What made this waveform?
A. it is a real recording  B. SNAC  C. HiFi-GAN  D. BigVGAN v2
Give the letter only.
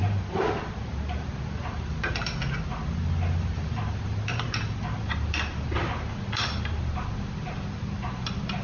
D